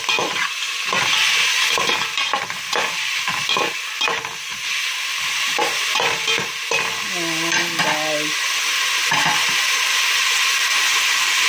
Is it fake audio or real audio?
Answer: real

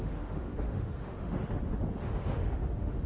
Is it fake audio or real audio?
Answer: fake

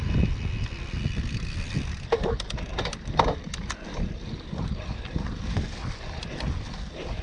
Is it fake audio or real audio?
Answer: real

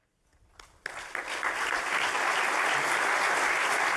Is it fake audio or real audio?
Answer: real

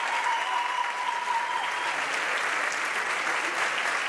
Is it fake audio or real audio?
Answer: real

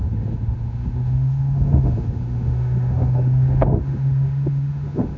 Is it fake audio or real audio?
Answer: fake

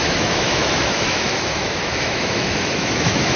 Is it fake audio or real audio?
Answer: fake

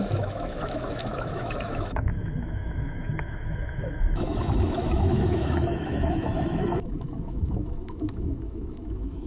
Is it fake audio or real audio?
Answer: fake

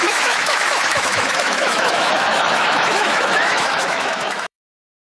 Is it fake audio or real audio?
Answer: fake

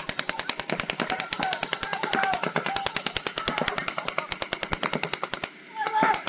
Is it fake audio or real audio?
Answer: real